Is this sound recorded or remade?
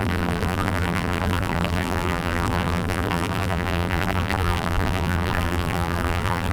remade